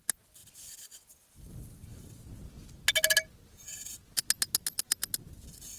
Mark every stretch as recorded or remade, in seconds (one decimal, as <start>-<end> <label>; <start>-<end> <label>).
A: 0.0-5.8 recorded